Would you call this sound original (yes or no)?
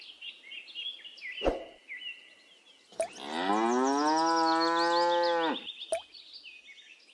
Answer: yes